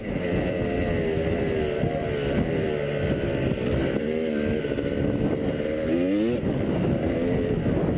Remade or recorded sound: recorded